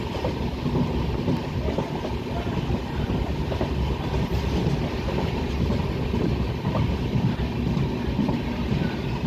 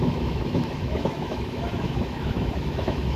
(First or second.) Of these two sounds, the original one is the first